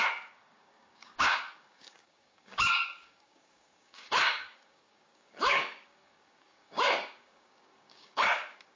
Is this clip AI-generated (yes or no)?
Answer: yes